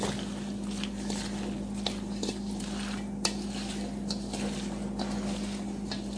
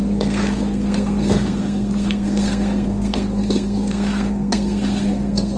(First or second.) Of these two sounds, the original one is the first